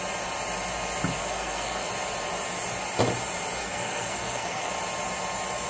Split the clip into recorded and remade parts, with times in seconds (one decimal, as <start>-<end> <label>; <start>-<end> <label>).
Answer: 0.0-1.2 recorded; 1.2-1.9 remade; 1.9-3.6 recorded; 3.6-4.7 remade; 4.7-5.7 recorded